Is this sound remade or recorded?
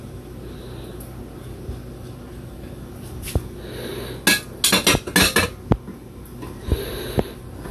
recorded